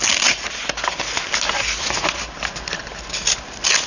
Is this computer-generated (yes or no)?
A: no